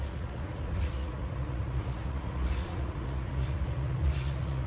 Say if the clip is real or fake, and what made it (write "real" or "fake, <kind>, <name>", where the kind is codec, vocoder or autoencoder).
fake, vocoder, Vocos